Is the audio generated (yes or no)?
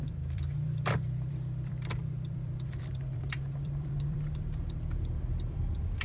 yes